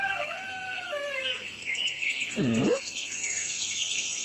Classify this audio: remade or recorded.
remade